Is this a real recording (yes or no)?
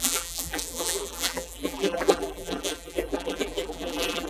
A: no